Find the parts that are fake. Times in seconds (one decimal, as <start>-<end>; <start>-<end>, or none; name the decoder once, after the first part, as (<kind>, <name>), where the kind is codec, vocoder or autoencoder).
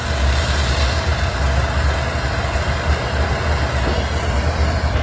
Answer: none